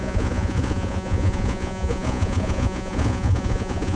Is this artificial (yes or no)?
yes